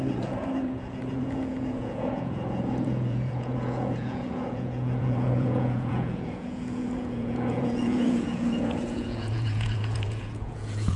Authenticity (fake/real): fake